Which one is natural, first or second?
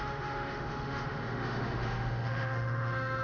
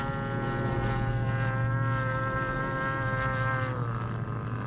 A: second